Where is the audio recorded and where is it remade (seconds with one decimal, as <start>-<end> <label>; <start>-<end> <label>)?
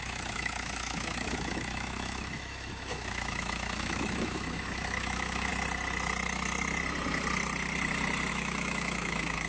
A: 0.0-5.5 remade; 5.5-8.3 recorded; 8.3-9.5 remade